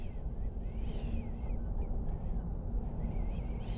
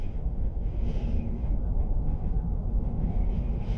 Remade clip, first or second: second